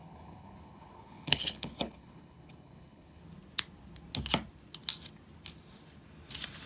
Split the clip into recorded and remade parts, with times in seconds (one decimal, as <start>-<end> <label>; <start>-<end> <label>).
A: 0.0-3.2 remade; 3.2-6.7 recorded